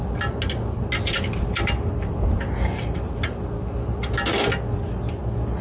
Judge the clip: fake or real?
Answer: real